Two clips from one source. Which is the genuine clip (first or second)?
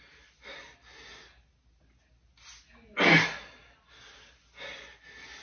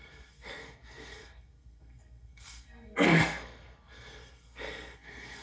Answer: first